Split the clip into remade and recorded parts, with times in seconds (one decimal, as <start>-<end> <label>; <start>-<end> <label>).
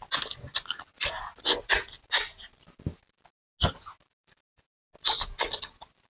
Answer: 0.0-6.2 recorded